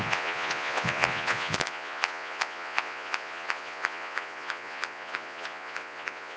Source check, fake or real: fake